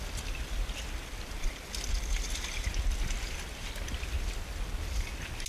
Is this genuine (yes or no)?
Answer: yes